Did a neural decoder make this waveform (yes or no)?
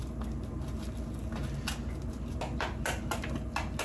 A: no